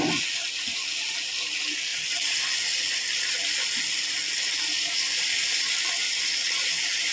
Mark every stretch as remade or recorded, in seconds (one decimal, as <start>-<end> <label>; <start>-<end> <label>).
0.0-7.1 recorded